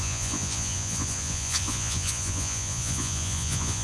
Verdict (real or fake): fake